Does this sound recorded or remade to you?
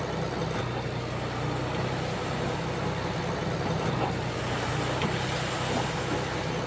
recorded